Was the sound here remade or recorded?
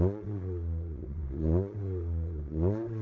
remade